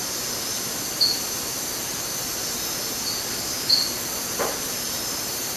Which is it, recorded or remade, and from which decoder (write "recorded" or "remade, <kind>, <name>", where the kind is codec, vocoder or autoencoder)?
recorded